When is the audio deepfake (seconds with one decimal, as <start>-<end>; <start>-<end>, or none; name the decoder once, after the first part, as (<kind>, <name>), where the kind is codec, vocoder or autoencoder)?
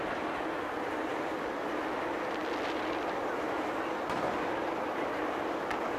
none